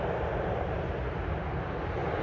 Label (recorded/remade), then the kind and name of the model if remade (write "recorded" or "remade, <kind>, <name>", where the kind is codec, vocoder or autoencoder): recorded